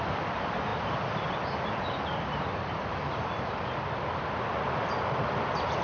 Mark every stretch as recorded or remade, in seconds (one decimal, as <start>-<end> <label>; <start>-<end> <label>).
0.0-5.8 remade